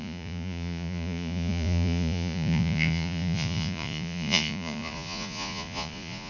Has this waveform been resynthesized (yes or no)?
yes